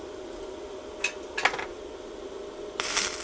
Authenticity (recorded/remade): recorded